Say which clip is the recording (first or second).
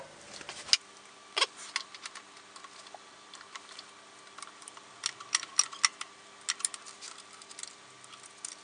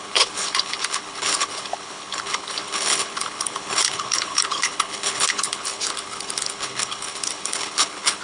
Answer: first